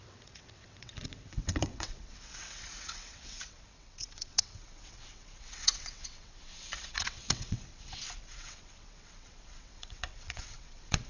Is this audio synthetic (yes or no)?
yes